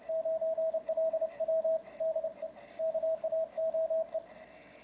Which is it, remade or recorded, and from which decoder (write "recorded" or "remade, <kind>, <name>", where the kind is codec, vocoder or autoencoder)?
recorded